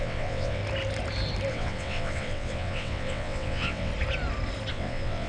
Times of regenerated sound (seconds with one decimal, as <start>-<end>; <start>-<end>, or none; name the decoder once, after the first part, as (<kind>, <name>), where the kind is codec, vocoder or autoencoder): 0.0-0.6 (vocoder, WaveNeXt); 1.5-3.9; 4.7-5.3